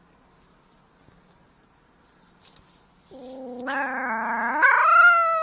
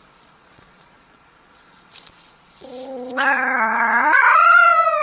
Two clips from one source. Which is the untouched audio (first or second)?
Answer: first